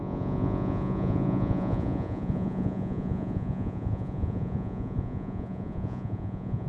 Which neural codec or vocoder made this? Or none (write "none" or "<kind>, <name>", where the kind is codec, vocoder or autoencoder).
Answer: vocoder, Vocos